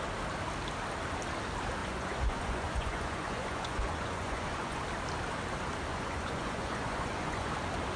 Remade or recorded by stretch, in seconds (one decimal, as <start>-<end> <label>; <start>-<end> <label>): 0.0-1.8 recorded; 1.8-4.8 remade; 4.8-5.9 recorded; 5.9-7.5 remade; 7.5-8.0 recorded